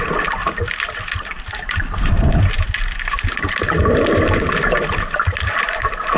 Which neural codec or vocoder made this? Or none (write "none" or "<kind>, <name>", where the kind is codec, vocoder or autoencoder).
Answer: vocoder, BigVGAN v2